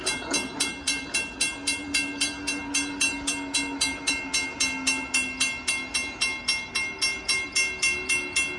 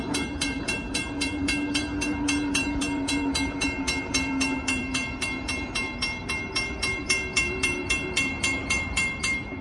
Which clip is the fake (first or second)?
second